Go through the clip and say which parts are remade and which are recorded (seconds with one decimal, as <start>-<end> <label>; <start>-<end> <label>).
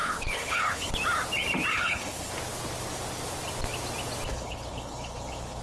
0.0-0.9 remade; 0.9-1.7 recorded; 1.7-2.3 remade; 2.3-4.3 recorded; 4.3-5.6 remade